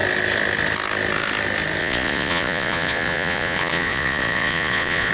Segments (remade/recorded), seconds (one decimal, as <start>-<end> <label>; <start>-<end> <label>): 0.0-1.8 recorded; 1.8-5.1 remade